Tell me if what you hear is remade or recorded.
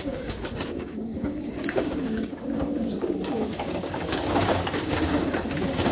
remade